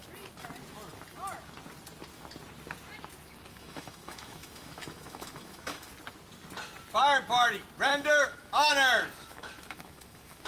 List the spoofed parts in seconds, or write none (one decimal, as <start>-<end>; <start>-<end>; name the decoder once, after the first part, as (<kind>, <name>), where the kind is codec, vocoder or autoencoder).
3.5-5.9 (autoencoder, DAC-VAE); 7.9-8.7; 9.2-10.5